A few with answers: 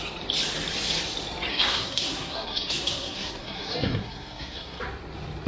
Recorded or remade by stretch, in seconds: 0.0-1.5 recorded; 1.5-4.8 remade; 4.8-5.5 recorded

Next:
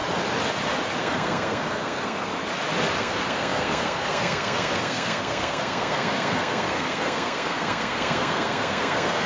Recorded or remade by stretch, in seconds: 0.0-1.0 recorded; 1.0-2.3 remade; 2.3-3.0 recorded; 3.0-9.3 remade

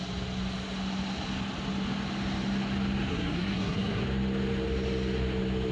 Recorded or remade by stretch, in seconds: 0.0-3.1 recorded; 3.1-4.0 remade; 4.0-5.7 recorded

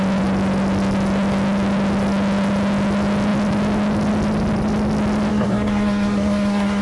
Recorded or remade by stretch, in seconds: 0.0-5.3 recorded; 5.3-6.8 remade

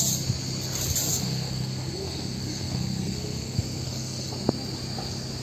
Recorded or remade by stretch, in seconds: 0.0-1.1 recorded; 1.1-4.3 remade; 4.3-5.4 recorded

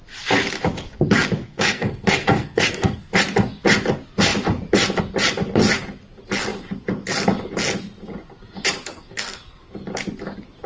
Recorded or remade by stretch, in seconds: 0.0-1.4 recorded; 1.4-3.1 remade; 3.1-8.9 recorded; 8.9-9.7 remade; 9.7-10.7 recorded

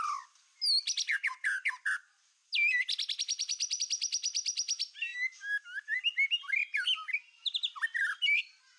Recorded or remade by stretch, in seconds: 0.0-8.8 recorded

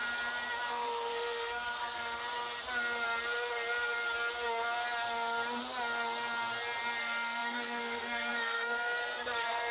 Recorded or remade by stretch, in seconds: 0.0-0.7 recorded; 0.7-2.2 remade; 2.2-7.0 recorded; 7.0-9.7 remade